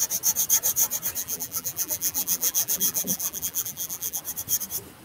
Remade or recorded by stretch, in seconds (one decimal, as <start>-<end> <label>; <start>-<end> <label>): 0.0-1.2 recorded; 1.2-4.2 remade; 4.2-5.0 recorded